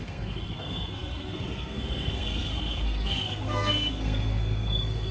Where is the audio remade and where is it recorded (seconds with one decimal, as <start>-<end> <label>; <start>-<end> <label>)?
0.0-5.1 remade